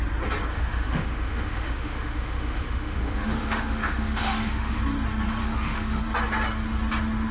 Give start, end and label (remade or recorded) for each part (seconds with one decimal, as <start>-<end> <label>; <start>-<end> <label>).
0.0-0.5 recorded; 0.5-4.8 remade; 4.8-5.4 recorded; 5.4-6.0 remade; 6.0-7.3 recorded